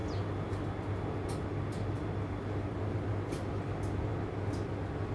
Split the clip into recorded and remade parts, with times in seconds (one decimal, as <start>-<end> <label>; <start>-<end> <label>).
0.0-5.1 recorded